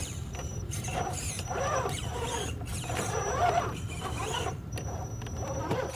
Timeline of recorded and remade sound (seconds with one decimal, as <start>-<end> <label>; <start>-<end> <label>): 0.0-6.0 remade